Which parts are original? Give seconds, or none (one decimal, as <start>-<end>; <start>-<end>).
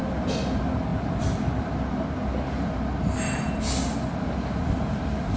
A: 0.0-5.4